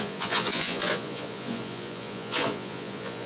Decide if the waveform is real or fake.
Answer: fake